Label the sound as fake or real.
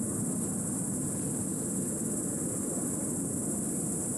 real